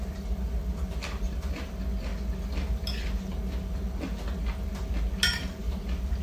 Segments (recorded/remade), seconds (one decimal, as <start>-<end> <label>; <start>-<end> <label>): 0.0-6.2 recorded